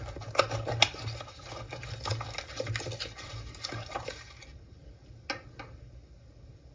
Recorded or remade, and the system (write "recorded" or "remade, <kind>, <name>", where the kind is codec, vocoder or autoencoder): recorded